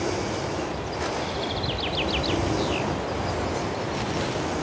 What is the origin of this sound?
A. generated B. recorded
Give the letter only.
B